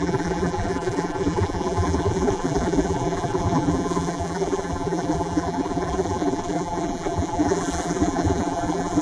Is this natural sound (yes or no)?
no